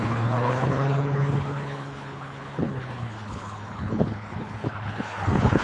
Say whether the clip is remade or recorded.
remade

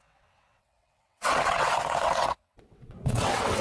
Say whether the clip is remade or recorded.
remade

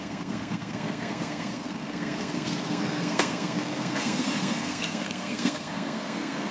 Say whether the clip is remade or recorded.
remade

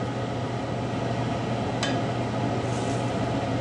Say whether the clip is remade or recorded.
recorded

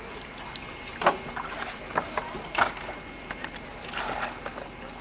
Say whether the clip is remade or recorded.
recorded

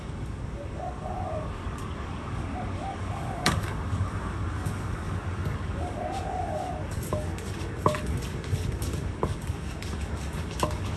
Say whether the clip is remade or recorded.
remade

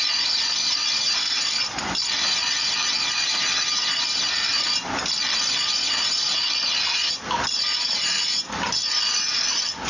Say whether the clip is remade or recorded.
recorded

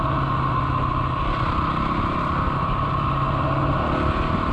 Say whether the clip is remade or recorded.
recorded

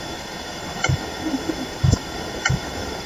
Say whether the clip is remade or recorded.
remade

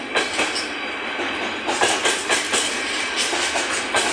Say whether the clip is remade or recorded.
recorded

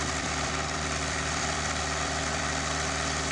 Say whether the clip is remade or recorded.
remade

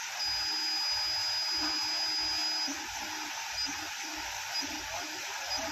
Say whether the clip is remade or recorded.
recorded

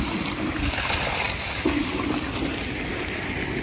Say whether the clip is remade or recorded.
recorded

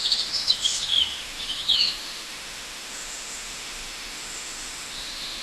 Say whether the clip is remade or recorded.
remade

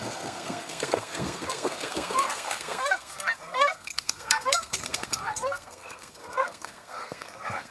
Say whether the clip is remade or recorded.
remade